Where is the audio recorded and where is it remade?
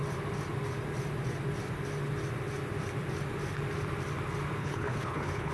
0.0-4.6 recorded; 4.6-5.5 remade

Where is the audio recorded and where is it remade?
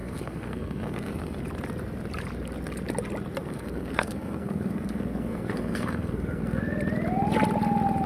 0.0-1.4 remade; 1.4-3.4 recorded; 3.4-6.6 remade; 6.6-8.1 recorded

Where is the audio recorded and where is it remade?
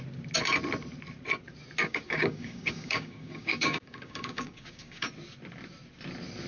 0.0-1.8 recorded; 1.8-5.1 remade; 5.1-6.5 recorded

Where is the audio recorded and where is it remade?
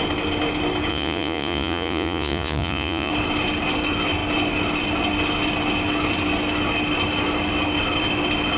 0.0-0.9 recorded; 0.9-3.1 remade; 3.1-8.6 recorded